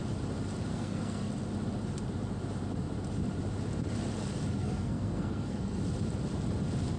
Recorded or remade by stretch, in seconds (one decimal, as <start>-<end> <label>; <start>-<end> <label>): 0.0-0.7 recorded; 0.7-1.3 remade; 1.3-4.5 recorded; 4.5-5.8 remade; 5.8-7.0 recorded